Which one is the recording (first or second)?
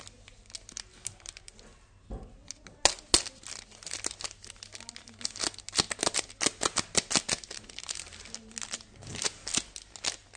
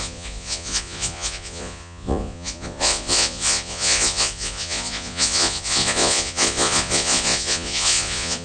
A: first